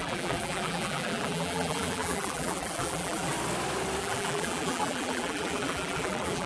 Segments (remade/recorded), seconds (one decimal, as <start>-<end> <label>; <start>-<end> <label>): 0.0-3.3 remade; 3.3-4.0 recorded; 4.0-6.5 remade